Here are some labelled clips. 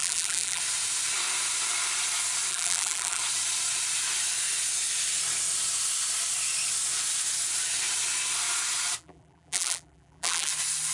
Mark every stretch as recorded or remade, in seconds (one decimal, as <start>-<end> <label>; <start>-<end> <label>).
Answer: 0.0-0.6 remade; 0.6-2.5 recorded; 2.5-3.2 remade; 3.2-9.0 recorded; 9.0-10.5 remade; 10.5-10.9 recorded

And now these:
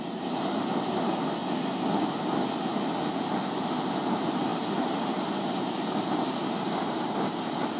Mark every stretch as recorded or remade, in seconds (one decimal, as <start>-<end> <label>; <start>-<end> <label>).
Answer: 0.0-1.4 remade; 1.4-2.6 recorded; 2.6-7.8 remade

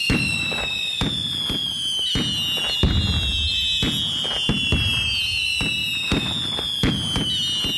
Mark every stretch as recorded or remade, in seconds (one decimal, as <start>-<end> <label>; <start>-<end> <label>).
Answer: 0.0-1.6 recorded; 1.6-2.1 remade; 2.1-7.8 recorded

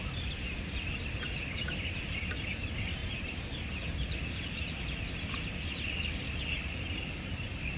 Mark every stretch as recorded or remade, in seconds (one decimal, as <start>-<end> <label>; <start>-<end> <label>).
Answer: 0.0-7.8 recorded